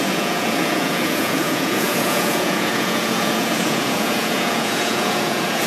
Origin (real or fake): fake